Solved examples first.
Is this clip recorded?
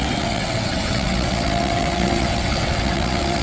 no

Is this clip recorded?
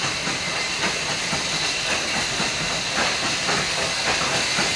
yes